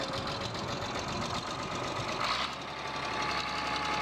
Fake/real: real